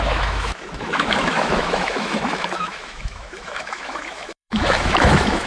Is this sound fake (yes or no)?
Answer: yes